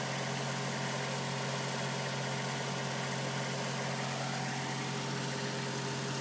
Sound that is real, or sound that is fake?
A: real